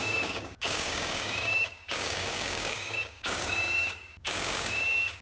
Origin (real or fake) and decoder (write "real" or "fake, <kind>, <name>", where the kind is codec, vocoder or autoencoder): fake, codec, DAC